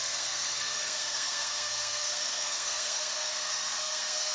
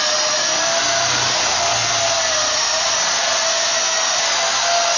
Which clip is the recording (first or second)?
second